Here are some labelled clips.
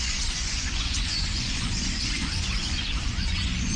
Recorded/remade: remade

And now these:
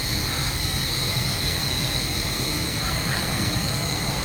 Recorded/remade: remade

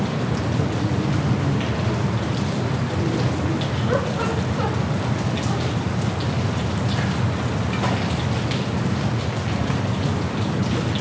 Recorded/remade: recorded